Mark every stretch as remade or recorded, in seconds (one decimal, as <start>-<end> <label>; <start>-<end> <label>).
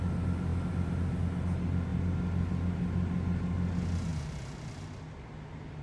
0.0-5.8 recorded